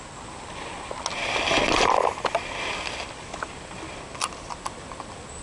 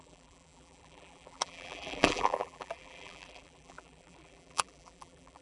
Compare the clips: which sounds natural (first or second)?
first